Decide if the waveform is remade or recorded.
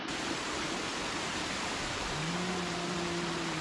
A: remade